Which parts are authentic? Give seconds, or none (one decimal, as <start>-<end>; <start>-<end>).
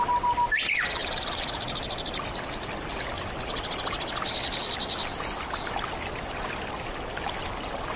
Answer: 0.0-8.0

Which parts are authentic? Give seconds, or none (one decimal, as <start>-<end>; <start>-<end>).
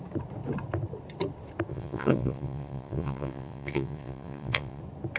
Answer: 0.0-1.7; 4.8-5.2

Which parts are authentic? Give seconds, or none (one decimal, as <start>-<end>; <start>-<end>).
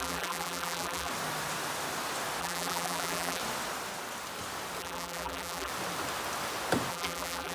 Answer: 1.1-2.4; 3.4-4.8; 5.7-6.9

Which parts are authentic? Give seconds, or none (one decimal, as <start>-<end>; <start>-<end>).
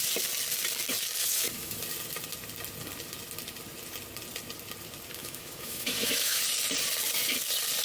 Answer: 0.0-1.2; 1.8-5.2; 6.4-7.8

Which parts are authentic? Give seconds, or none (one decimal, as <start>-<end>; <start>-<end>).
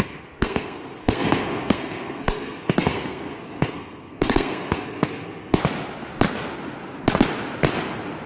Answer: 5.6-8.3